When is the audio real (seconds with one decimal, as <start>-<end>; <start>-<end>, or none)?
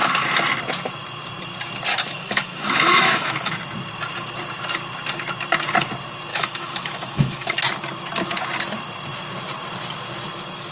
0.0-1.9; 3.5-6.3; 7.6-10.7